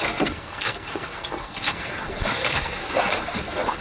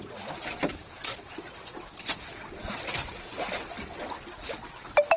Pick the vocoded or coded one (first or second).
first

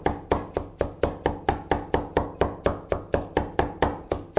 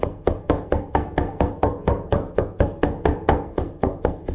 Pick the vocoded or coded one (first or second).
second